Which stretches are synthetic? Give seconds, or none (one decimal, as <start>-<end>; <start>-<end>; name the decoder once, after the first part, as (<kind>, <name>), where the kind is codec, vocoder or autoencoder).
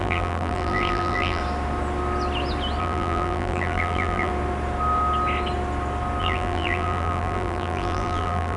0.0-1.4 (vocoder, BigVGAN v2); 2.8-4.3; 6.2-8.6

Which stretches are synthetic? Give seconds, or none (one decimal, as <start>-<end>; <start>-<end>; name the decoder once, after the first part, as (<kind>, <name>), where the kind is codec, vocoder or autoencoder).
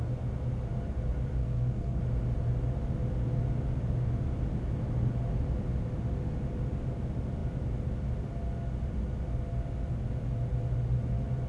1.4-2.0 (codec, SNAC)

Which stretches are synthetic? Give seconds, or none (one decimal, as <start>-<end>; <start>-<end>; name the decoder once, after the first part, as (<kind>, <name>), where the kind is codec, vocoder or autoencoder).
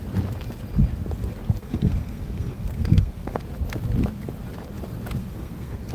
1.6-3.4 (codec, SNAC); 5.2-5.9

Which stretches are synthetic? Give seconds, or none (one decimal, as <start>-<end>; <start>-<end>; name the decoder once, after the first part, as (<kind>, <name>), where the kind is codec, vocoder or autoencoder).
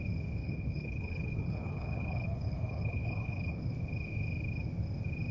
0.4-3.6 (codec, HILCodec)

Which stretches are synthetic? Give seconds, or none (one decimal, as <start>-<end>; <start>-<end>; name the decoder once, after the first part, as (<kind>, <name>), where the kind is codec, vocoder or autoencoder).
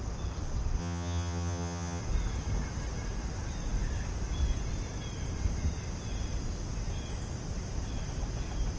0.8-2.0 (vocoder, HiFi-GAN)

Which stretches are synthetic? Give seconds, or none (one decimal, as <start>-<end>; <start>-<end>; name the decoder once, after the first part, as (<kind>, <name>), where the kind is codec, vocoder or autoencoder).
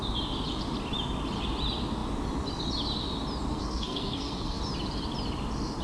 3.5-4.6 (codec, SNAC)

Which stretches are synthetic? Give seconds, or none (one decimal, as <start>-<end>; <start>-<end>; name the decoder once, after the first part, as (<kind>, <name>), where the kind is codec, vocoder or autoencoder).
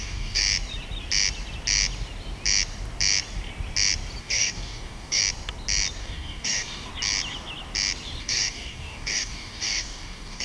0.0-0.4 (codec, DAC); 4.2-5.2; 6.0-6.9; 8.2-10.4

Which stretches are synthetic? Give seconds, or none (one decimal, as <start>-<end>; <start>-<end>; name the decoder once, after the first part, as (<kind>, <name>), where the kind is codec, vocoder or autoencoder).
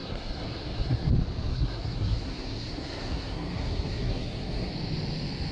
0.0-1.1 (codec, SNAC); 1.5-4.7